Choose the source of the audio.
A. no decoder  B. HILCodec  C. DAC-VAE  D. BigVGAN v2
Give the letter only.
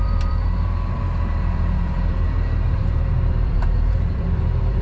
D